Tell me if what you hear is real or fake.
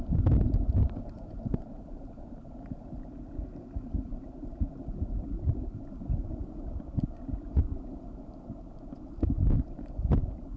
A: real